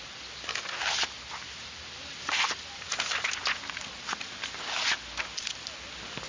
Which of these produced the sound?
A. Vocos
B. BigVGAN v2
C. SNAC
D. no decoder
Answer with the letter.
D